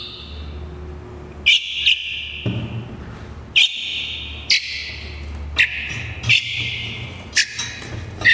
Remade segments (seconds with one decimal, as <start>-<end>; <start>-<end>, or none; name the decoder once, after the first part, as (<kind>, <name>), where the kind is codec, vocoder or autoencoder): none